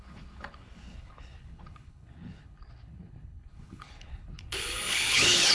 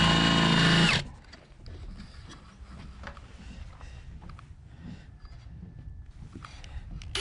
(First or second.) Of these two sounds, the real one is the second